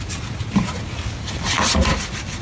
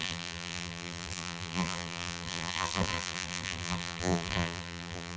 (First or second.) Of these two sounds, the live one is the first